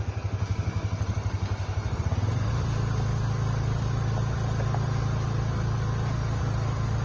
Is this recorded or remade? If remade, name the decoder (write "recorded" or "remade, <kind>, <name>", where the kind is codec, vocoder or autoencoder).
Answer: recorded